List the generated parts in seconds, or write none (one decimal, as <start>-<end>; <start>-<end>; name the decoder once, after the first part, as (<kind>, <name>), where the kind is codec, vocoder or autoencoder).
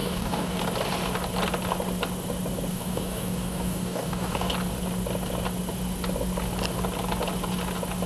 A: 0.0-0.6 (codec, DAC); 2.7-4.5